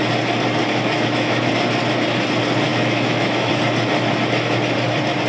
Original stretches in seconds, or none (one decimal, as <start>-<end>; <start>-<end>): 0.0-0.6; 1.5-2.7; 3.5-5.3